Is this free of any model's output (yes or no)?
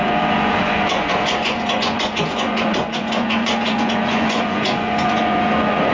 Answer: no